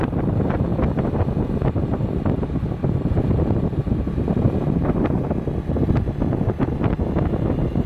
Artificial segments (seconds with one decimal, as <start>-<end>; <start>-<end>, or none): none